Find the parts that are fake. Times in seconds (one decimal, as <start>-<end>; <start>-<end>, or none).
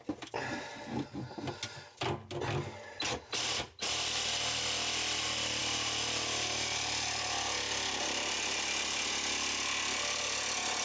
none